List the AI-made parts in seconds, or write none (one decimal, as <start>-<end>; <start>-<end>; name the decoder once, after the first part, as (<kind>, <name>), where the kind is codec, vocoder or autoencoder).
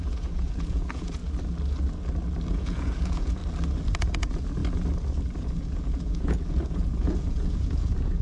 0.0-1.2 (vocoder, Vocos); 2.5-3.4; 4.0-4.6; 5.4-8.2